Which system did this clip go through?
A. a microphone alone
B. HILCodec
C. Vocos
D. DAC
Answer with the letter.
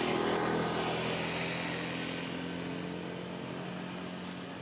A